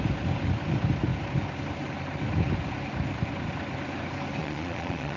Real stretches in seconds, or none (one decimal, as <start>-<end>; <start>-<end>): 0.0-4.4